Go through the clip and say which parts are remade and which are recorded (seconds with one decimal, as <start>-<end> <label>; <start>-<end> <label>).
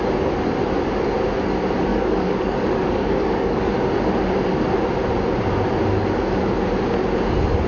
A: 0.0-1.9 recorded; 1.9-3.7 remade; 3.7-7.7 recorded